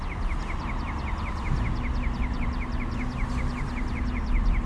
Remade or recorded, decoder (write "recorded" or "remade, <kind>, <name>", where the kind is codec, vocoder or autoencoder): recorded